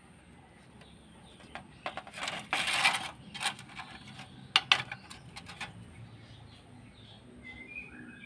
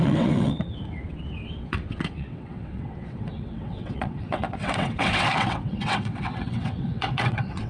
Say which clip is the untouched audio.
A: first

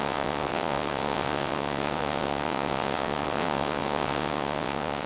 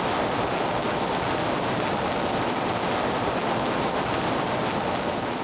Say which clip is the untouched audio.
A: second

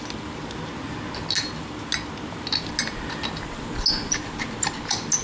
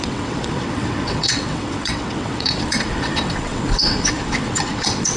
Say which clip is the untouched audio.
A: first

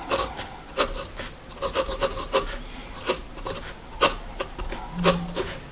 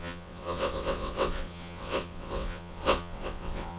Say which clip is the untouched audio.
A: first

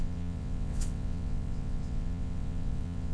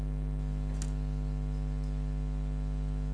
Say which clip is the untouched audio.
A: second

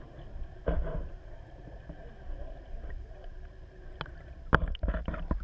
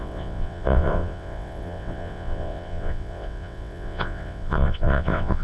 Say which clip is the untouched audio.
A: first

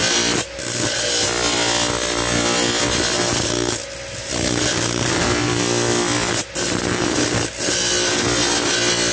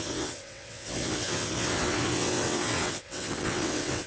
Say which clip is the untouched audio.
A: first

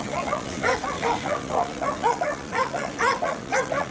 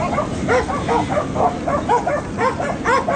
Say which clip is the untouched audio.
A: second